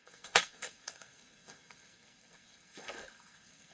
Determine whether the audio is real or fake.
fake